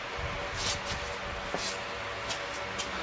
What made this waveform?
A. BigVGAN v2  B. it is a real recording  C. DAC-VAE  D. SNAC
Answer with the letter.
B